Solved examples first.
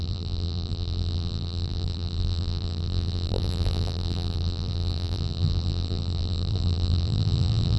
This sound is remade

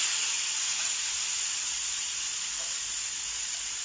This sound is remade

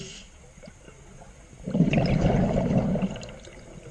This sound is recorded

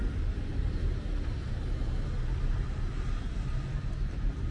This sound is recorded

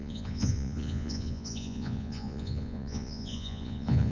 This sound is remade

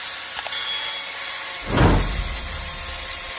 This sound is recorded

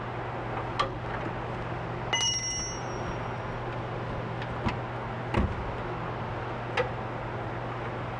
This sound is recorded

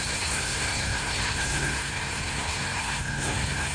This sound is remade